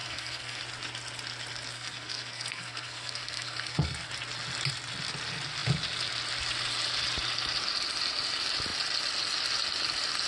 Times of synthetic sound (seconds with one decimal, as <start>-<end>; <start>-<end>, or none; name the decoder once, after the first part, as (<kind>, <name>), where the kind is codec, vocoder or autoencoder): 0.0-0.6 (codec, SNAC); 1.7-4.1

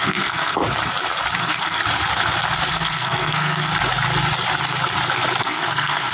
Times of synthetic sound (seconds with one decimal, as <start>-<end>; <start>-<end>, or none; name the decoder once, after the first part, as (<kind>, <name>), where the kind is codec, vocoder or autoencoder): 0.0-0.6 (codec, SNAC); 1.4-1.8; 2.7-3.7; 5.4-6.1

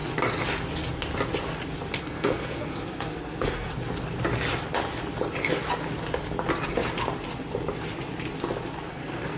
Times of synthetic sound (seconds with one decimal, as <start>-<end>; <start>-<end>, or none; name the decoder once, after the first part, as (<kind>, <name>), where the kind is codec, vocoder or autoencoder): 2.0-3.8 (codec, SNAC); 8.9-9.4

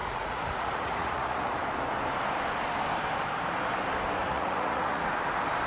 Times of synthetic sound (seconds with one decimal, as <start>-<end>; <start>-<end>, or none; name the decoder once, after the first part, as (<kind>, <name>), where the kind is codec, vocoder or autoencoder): 0.0-1.6 (vocoder, Vocos); 4.3-5.1